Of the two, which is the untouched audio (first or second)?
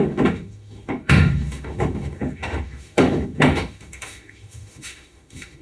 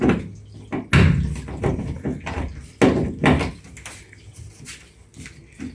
second